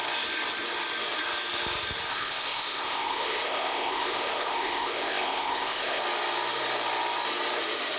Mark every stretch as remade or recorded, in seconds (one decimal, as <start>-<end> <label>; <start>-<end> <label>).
0.0-2.1 recorded; 2.1-6.0 remade; 6.0-8.0 recorded

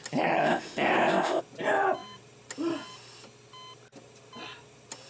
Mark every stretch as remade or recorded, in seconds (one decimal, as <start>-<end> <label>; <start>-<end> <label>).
0.0-0.4 recorded; 0.4-1.4 remade; 1.4-5.1 recorded

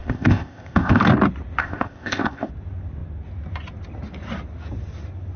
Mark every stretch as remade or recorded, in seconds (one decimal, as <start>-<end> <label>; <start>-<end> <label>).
0.0-1.0 remade; 1.0-1.6 recorded; 1.6-2.5 remade; 2.5-5.4 recorded

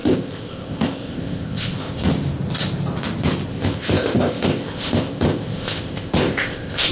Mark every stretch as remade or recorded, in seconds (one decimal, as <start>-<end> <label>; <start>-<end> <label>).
0.0-2.0 remade; 2.0-3.5 recorded; 3.5-6.9 remade

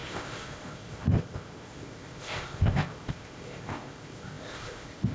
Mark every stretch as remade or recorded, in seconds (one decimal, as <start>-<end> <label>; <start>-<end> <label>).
0.0-5.1 remade

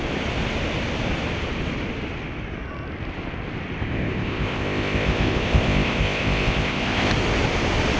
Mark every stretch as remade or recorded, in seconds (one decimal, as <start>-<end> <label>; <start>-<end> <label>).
0.0-3.8 recorded; 3.8-7.1 remade; 7.1-8.0 recorded

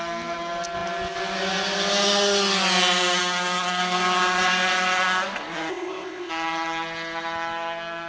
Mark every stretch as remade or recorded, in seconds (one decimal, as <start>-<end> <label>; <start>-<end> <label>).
0.0-5.7 recorded; 5.7-6.3 remade; 6.3-8.1 recorded